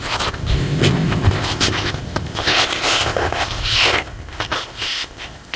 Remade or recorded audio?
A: remade